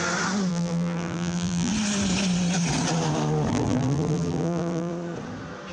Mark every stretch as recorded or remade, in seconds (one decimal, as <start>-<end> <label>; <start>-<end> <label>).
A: 0.0-0.5 recorded; 0.5-1.7 remade; 1.7-3.5 recorded; 3.5-4.9 remade; 4.9-5.7 recorded